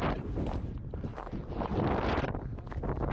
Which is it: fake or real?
real